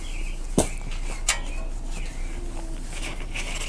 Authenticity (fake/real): real